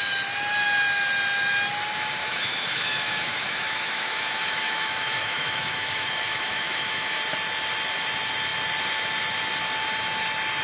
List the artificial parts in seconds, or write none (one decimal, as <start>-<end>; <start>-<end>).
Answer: 2.2-7.2